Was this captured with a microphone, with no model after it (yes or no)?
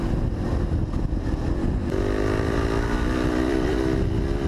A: yes